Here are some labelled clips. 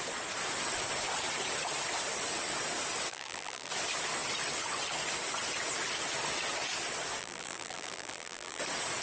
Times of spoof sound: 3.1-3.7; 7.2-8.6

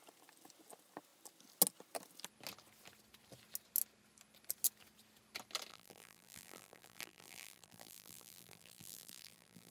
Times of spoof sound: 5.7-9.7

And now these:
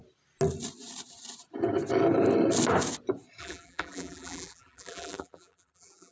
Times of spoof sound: 3.4-6.1